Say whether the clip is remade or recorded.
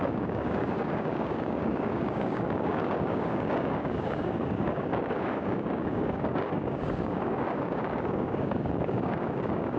remade